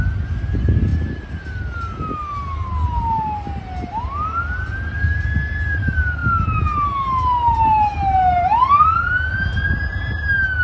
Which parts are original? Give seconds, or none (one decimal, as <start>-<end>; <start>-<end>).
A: 0.0-10.6